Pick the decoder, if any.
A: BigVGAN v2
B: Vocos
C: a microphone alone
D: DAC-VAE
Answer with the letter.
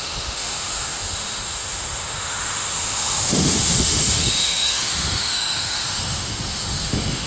D